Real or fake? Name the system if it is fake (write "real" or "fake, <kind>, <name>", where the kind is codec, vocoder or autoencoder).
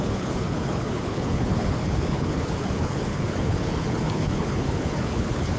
fake, codec, HILCodec